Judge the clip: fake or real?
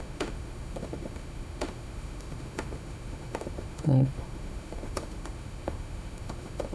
fake